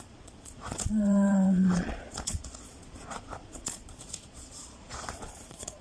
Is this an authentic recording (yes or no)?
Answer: no